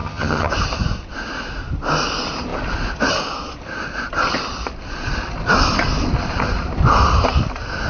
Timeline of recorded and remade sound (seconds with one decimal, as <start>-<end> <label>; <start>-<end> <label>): 0.0-0.5 remade; 0.5-7.9 recorded